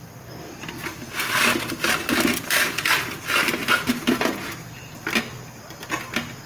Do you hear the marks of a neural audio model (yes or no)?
no